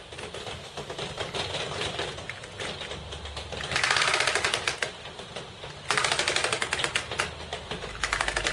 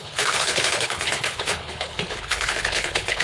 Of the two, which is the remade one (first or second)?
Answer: second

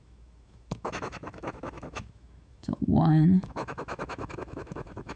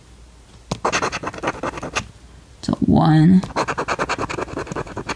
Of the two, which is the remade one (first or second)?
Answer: first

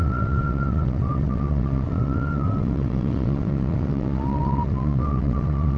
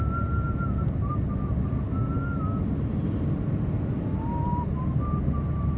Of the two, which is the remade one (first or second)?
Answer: first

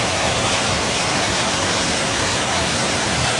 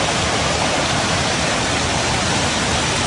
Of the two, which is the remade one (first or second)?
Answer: first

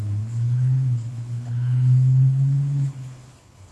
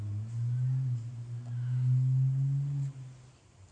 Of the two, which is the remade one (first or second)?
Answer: first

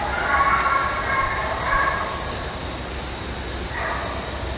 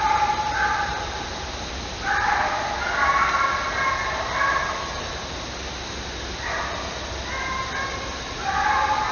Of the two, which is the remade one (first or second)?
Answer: first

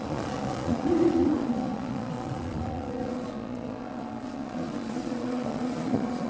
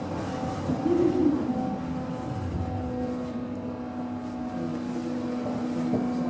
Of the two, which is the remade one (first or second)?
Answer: first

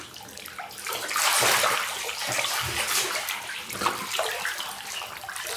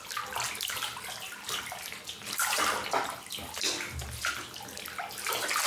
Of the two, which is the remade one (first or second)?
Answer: first